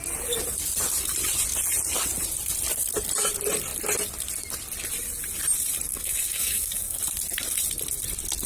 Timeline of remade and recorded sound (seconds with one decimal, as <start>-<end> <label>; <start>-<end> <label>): 0.0-5.9 recorded; 5.9-7.0 remade; 7.0-8.5 recorded